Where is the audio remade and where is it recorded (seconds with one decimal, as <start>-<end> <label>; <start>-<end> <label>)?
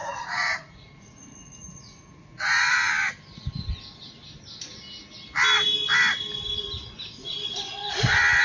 0.0-2.9 remade; 2.9-8.4 recorded